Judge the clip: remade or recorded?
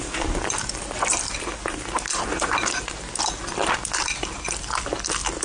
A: recorded